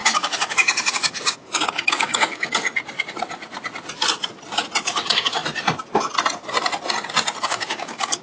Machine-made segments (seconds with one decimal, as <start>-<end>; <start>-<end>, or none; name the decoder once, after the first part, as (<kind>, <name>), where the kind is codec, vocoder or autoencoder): 0.0-2.6 (codec, DAC); 5.0-5.4; 7.4-8.2